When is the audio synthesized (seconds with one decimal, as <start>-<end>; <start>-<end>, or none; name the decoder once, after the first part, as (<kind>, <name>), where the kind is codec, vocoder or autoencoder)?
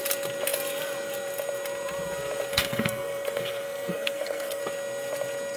2.5-4.6 (codec, SNAC)